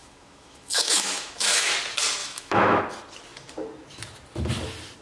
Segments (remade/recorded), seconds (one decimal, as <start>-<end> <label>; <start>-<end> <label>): 0.0-1.7 remade; 1.7-2.2 recorded; 2.2-2.8 remade; 2.8-5.0 recorded